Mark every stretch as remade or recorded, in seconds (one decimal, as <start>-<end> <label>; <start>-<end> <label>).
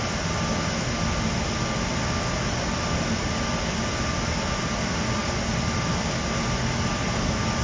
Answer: 0.0-7.6 recorded